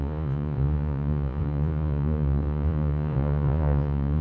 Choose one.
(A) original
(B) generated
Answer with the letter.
B